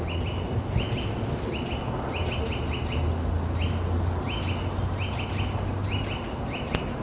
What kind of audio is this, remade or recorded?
recorded